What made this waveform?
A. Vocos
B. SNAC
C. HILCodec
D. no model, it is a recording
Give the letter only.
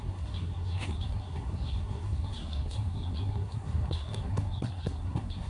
B